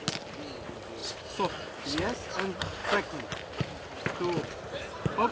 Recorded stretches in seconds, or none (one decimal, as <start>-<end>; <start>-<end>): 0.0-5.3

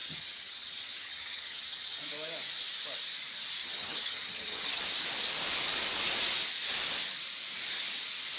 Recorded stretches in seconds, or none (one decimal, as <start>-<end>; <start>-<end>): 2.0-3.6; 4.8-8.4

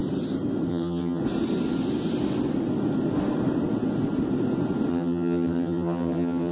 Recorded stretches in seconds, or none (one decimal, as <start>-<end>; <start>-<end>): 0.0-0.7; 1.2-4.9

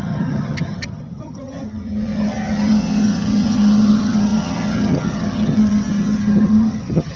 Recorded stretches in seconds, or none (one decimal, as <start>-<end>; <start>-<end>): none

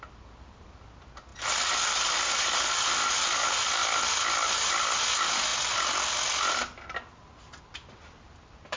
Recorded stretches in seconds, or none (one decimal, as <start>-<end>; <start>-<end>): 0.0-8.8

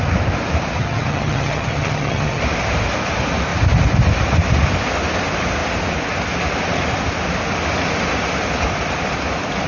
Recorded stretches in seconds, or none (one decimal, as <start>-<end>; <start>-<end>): 0.0-0.8; 2.4-9.7

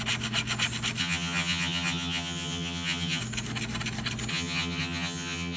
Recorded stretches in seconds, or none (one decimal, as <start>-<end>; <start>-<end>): 0.0-1.0; 3.2-4.3